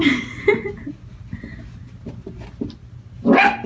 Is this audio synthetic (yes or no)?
no